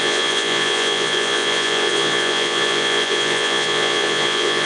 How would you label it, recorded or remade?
remade